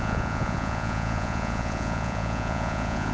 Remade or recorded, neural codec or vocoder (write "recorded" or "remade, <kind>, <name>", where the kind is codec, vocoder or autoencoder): remade, vocoder, Vocos